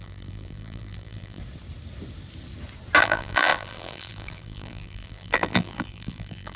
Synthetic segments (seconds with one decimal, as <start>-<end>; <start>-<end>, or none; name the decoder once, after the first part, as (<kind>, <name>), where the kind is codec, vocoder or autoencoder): 0.0-1.4 (vocoder, BigVGAN v2); 3.0-6.6